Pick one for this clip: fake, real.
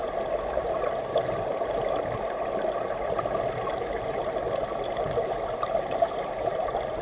real